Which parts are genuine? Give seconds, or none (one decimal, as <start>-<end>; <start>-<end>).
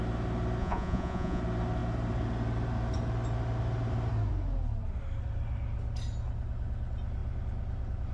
0.0-0.6; 1.4-8.1